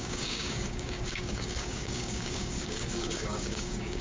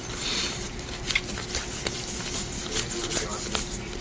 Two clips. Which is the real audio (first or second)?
second